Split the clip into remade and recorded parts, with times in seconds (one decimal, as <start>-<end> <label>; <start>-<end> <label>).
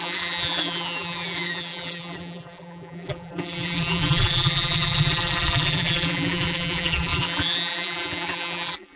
0.0-9.0 remade